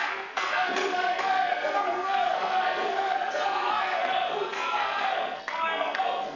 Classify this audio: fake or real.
fake